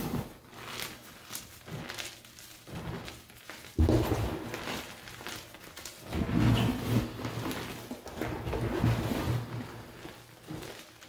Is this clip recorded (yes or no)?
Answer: yes